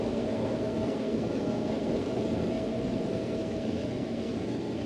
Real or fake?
fake